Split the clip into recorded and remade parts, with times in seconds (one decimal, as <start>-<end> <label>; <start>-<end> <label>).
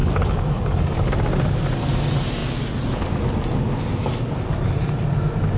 0.0-1.1 remade; 1.1-5.6 recorded